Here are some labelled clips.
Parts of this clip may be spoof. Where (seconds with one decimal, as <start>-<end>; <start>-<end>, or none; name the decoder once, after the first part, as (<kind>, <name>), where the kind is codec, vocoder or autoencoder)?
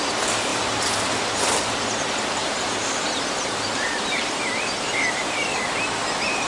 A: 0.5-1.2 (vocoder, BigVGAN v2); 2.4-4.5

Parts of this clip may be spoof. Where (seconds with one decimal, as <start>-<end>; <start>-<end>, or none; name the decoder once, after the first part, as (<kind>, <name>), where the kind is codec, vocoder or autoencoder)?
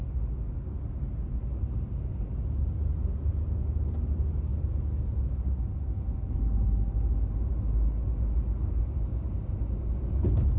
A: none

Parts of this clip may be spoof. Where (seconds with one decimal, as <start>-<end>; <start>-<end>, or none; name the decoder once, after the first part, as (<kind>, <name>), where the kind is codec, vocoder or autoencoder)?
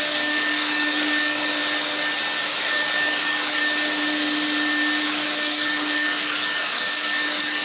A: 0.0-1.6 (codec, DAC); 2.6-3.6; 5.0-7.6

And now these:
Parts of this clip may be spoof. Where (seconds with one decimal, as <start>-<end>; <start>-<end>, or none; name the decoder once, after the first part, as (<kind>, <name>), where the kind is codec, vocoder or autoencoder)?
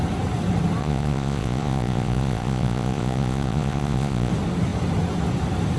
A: 0.8-4.3 (vocoder, Vocos)